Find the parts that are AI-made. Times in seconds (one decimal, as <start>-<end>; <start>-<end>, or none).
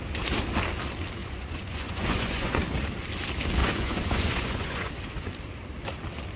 1.2-2.6; 3.6-4.9